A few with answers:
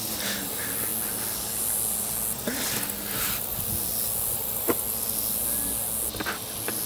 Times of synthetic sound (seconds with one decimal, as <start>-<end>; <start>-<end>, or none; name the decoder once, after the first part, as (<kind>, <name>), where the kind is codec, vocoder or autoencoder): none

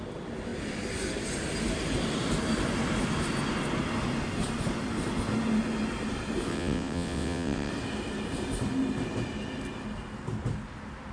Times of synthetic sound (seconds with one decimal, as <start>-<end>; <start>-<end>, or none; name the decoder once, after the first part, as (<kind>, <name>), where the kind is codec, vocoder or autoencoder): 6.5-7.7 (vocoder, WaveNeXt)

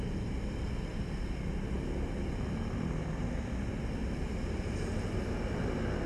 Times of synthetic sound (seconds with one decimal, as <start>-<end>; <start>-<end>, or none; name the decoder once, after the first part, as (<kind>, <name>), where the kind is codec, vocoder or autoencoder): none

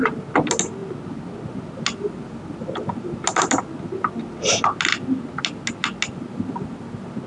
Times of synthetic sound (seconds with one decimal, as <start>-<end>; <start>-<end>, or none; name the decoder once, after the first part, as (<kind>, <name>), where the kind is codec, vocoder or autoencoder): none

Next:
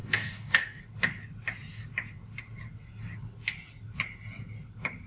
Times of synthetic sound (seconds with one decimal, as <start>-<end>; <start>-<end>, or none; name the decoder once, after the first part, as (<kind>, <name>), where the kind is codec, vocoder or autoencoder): 0.0-0.8 (codec, DAC)

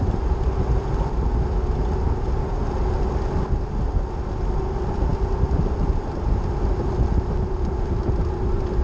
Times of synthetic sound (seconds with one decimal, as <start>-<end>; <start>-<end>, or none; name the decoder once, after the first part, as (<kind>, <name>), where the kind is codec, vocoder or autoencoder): none